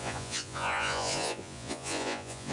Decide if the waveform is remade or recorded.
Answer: remade